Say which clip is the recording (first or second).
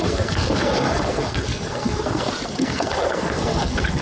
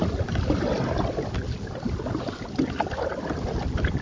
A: second